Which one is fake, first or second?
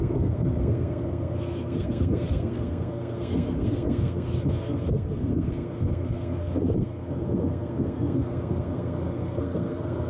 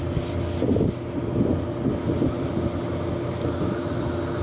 first